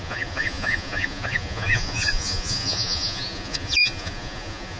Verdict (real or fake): fake